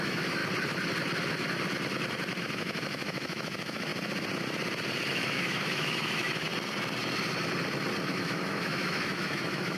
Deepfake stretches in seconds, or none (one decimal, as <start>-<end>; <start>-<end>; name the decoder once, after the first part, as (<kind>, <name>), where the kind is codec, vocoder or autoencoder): 0.0-0.4 (autoencoder, DAC-VAE); 2.4-3.9; 5.1-6.5; 8.1-9.8